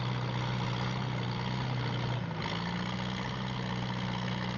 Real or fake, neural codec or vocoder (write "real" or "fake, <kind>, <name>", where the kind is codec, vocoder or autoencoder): real